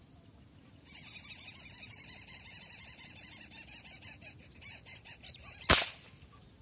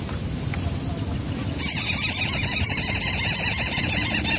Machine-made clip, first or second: first